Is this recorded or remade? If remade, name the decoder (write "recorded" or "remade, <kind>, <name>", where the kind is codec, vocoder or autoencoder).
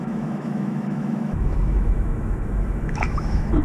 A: remade, autoencoder, DAC-VAE